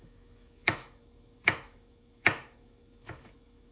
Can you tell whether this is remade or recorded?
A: remade